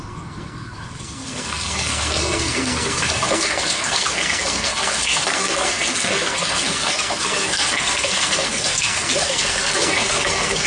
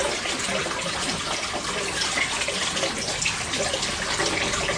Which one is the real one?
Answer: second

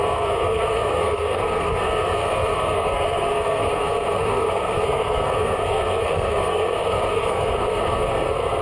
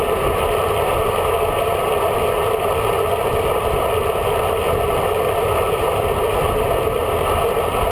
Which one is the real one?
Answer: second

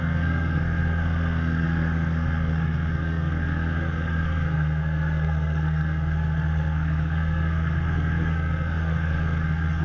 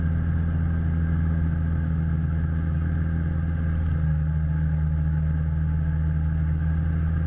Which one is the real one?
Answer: second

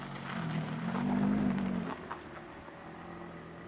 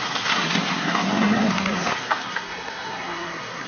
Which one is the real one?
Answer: first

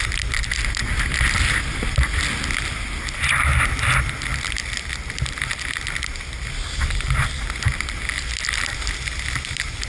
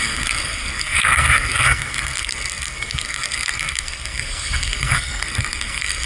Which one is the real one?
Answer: first